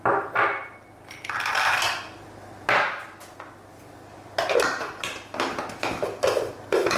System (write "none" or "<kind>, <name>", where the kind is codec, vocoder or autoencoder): none